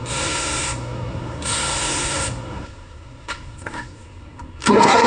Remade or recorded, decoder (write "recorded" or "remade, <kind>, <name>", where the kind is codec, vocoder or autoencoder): remade, codec, SNAC